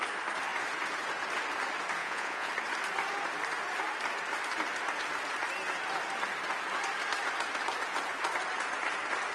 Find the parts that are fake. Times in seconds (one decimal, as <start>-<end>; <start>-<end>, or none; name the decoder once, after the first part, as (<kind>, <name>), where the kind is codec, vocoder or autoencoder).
2.0-2.5 (vocoder, Vocos)